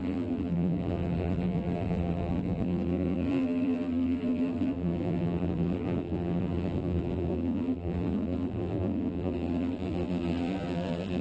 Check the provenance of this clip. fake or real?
fake